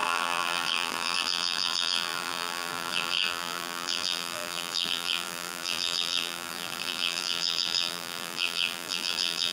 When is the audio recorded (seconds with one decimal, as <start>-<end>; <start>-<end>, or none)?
none